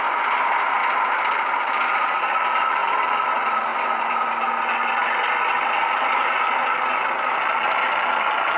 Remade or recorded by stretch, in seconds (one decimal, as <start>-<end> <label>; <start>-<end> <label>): 0.0-8.6 recorded